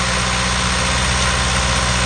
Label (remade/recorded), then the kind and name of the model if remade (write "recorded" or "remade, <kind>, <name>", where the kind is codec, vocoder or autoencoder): recorded